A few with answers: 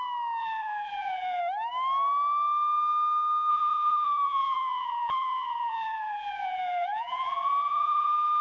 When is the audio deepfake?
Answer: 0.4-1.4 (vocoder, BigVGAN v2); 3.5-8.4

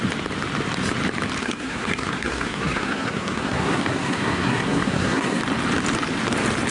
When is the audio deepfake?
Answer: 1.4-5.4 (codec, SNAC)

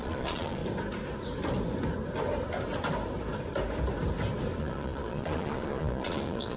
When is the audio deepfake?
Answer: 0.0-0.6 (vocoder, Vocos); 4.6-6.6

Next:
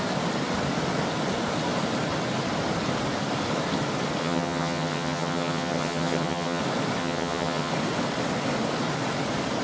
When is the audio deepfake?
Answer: 4.2-6.6 (vocoder, HiFi-GAN); 7.0-7.7

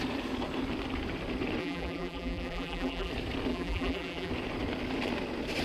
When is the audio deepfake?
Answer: 1.6-3.1 (vocoder, BigVGAN v2); 3.5-4.3

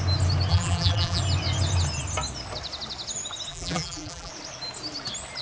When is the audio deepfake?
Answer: 0.5-1.2 (vocoder, BigVGAN v2); 3.5-4.3